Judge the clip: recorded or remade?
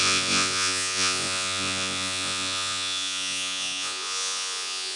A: remade